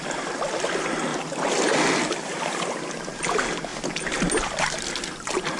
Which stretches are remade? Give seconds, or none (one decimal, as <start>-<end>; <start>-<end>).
none